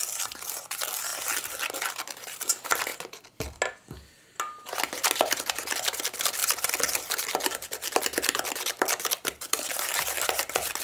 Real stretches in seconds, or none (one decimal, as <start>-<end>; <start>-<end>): 1.1-1.9; 2.9-5.8; 6.4-8.0